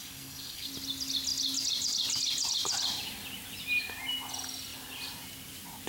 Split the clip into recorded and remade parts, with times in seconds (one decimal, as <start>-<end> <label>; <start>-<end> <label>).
0.0-0.7 remade; 0.7-5.9 recorded